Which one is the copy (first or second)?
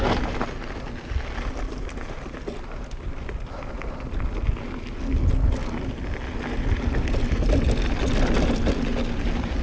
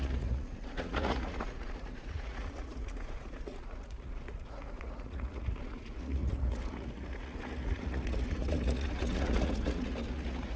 second